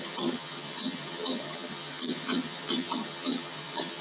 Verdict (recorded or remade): remade